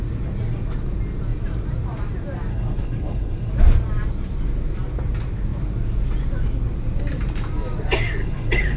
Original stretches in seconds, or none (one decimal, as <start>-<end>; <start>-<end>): 0.0-2.5; 3.5-8.2